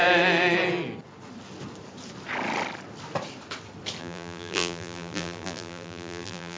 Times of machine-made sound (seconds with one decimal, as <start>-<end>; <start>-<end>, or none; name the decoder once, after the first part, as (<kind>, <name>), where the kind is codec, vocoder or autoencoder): 4.0-6.6 (vocoder, BigVGAN v2)